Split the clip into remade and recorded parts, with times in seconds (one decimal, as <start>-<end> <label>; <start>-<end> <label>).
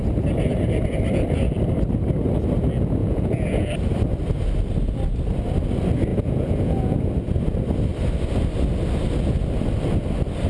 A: 0.0-3.0 recorded; 3.0-3.7 remade; 3.7-6.1 recorded; 6.1-7.1 remade; 7.1-10.5 recorded